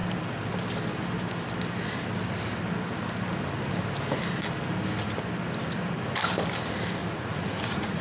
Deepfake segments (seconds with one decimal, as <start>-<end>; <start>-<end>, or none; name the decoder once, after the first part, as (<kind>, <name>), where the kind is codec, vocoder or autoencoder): 7.0-8.0 (vocoder, Vocos)